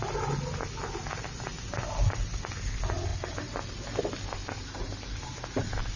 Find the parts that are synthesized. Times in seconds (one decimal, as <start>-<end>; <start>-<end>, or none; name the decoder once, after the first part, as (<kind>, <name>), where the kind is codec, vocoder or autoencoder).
none